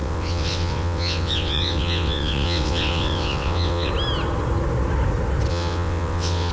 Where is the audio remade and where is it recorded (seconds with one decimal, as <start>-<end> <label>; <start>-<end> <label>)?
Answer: 0.0-3.9 remade; 3.9-5.5 recorded; 5.5-6.5 remade